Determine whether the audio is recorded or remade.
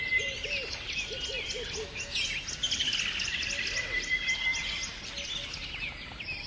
recorded